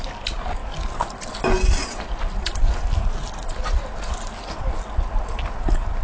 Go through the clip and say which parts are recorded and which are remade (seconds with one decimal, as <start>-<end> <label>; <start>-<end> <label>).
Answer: 0.0-6.0 recorded